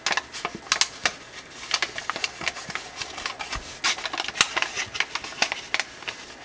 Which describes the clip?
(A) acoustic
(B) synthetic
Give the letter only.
A